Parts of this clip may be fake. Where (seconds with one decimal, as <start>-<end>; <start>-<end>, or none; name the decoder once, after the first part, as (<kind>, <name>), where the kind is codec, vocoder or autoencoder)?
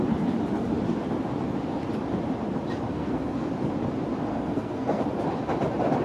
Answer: 2.9-3.5 (codec, SNAC); 4.3-5.0